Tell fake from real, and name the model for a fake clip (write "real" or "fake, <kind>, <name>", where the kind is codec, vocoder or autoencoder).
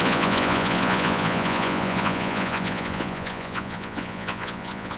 fake, vocoder, Vocos